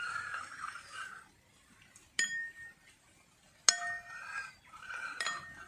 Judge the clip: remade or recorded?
recorded